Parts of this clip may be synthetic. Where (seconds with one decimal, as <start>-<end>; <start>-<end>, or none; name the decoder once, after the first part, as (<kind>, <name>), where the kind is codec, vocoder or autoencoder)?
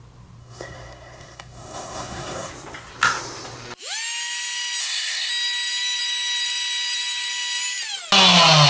0.4-2.5 (codec, SNAC); 4.8-5.3